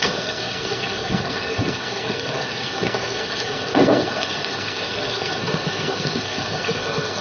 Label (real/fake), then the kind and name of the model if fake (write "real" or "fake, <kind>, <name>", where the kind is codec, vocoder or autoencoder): fake, codec, SNAC